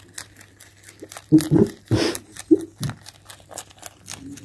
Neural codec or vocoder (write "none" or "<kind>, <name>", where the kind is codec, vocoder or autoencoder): none